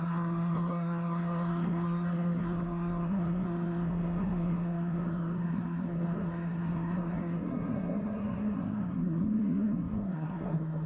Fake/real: fake